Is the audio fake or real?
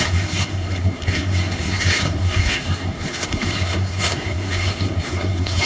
fake